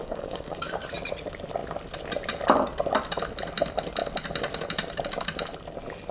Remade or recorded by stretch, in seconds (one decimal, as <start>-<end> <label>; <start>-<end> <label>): 0.0-0.8 remade; 0.8-6.1 recorded